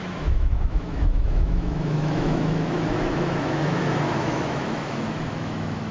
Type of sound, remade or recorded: remade